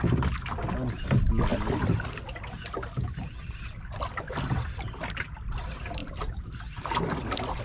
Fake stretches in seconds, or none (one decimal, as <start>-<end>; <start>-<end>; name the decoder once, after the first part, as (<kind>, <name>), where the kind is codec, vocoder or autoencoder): none